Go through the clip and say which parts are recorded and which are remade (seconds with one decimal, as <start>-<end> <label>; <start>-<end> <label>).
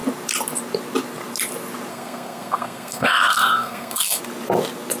0.0-1.9 recorded; 1.9-4.2 remade; 4.2-5.0 recorded